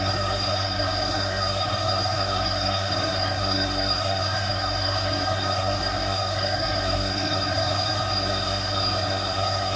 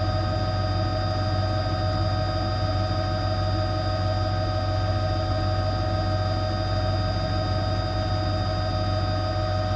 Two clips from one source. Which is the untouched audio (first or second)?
second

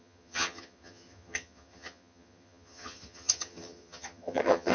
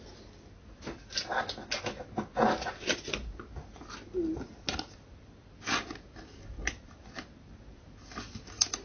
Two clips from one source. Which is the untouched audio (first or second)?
second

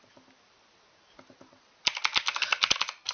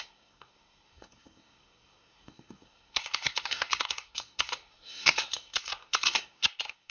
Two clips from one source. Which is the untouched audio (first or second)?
first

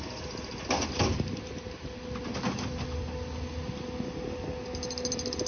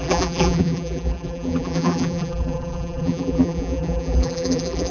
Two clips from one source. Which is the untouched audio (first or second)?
first